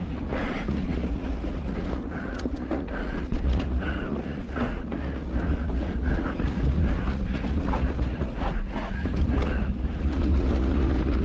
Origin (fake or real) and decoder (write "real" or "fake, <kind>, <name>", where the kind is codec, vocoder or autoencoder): fake, vocoder, Vocos